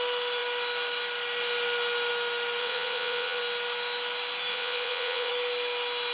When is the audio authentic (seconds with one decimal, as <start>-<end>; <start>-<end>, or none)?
0.0-2.6; 3.4-4.5; 5.3-6.1